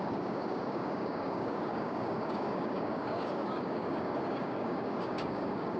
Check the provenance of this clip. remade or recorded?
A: remade